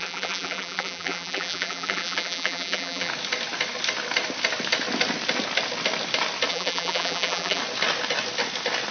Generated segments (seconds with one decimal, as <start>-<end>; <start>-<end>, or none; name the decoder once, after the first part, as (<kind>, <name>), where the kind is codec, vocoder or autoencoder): 0.0-3.1 (vocoder, BigVGAN v2); 6.5-7.6